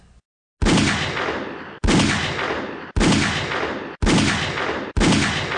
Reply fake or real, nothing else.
real